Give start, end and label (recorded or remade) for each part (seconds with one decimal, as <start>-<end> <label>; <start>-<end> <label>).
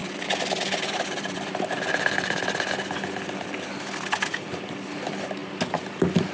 0.0-2.7 remade; 2.7-6.3 recorded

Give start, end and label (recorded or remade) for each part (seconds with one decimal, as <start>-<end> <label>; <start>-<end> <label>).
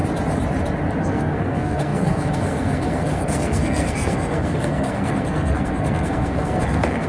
0.0-1.0 recorded; 1.0-7.1 remade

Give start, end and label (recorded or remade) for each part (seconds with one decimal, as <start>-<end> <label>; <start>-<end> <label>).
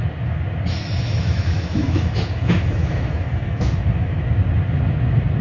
0.0-1.0 recorded; 1.0-4.2 remade; 4.2-5.4 recorded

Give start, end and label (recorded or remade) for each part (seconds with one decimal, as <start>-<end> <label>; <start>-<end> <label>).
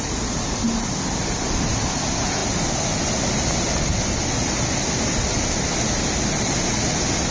0.0-7.3 recorded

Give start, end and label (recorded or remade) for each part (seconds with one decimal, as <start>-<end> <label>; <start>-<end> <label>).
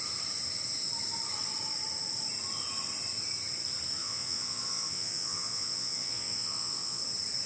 0.0-4.0 recorded; 4.0-7.0 remade; 7.0-7.5 recorded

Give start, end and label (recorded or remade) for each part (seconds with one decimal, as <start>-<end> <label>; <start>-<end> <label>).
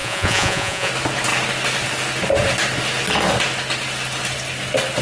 0.0-0.9 remade; 0.9-5.0 recorded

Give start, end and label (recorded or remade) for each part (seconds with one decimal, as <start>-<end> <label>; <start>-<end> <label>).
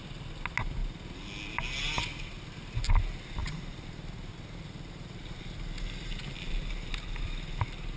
0.0-8.0 recorded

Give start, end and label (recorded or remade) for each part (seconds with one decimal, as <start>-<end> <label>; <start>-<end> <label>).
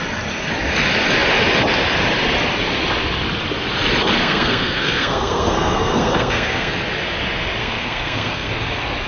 0.0-4.2 recorded; 4.2-6.7 remade; 6.7-7.6 recorded; 7.6-8.5 remade; 8.5-9.1 recorded